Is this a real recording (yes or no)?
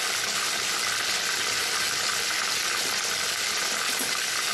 yes